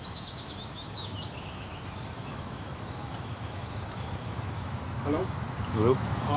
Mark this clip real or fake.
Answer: fake